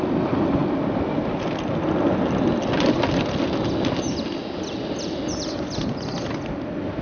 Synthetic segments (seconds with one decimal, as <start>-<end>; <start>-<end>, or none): none